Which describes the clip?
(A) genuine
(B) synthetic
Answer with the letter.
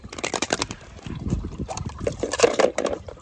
B